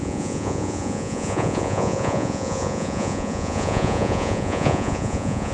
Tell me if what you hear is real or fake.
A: fake